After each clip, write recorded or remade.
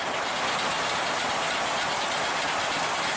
recorded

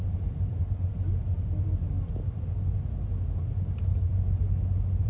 recorded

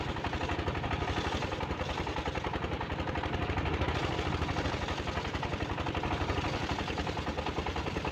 recorded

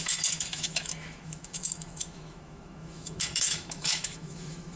remade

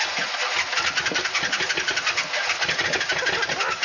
recorded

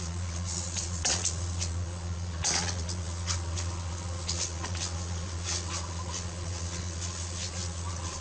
remade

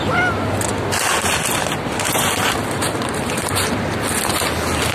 recorded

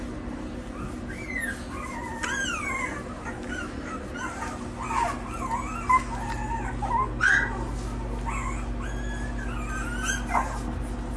recorded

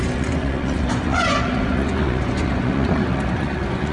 remade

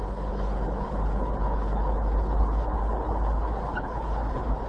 remade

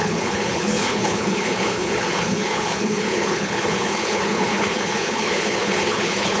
remade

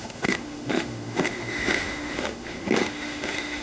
remade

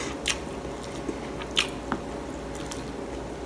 recorded